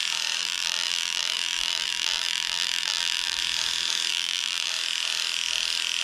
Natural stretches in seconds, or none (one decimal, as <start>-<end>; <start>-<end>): 0.0-0.4; 3.4-4.1; 4.7-6.0